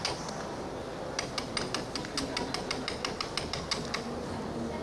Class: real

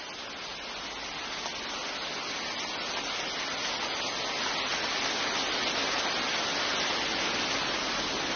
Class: real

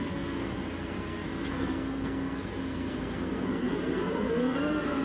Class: fake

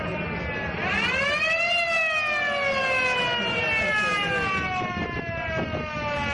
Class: real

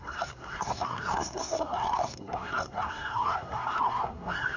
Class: fake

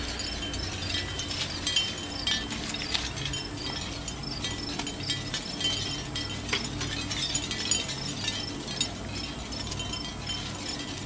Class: real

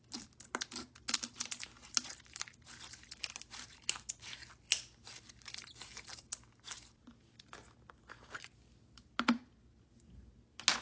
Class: real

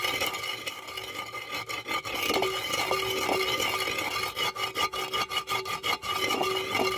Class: real